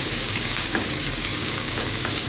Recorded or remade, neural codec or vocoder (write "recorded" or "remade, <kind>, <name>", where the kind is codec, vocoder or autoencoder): remade, codec, DAC